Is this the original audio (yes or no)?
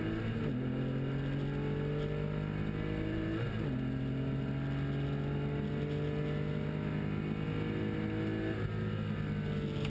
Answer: yes